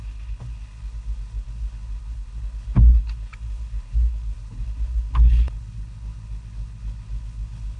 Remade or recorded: remade